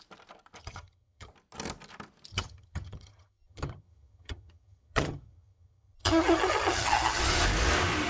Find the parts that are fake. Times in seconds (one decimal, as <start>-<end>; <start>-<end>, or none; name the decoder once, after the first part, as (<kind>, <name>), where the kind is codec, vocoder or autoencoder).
0.6-1.3 (vocoder, HiFi-GAN); 2.3-7.2